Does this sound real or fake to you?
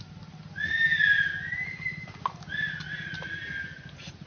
real